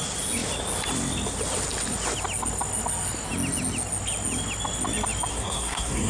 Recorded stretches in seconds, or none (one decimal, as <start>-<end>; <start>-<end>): 0.0-5.3